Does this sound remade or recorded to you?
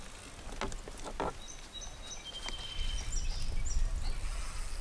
recorded